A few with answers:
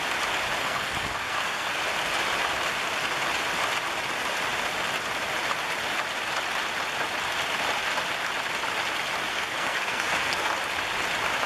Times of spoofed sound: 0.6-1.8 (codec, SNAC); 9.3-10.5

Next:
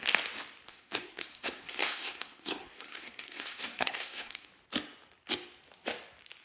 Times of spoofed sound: 0.7-4.5 (codec, SNAC)

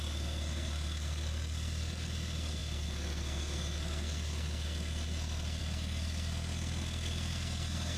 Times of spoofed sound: 0.0-8.0 (codec, SNAC)

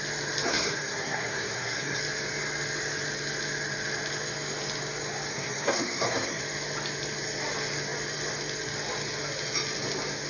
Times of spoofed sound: 0.5-2.0 (codec, SNAC); 5.3-6.4